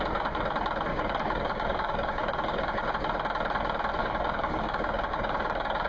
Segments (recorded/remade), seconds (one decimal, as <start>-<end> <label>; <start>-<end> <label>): 0.0-0.9 recorded; 0.9-2.9 remade; 2.9-4.0 recorded; 4.0-5.9 remade